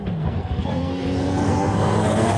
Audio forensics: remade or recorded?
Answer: remade